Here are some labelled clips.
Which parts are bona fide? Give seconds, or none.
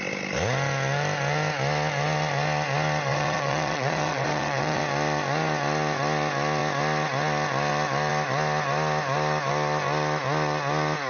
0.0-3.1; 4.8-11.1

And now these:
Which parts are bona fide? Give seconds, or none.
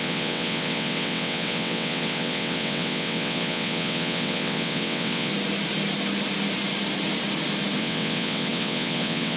5.3-7.8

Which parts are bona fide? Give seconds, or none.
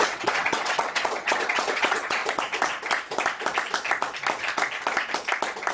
2.2-5.7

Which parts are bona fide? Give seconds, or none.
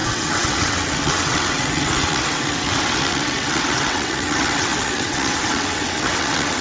none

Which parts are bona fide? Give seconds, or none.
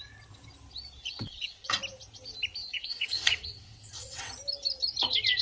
0.0-1.0; 1.8-2.7; 4.3-5.4